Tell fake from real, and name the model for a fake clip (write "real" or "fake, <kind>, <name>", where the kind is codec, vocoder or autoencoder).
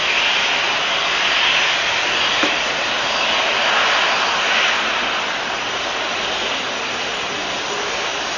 real